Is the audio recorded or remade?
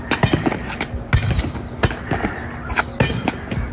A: recorded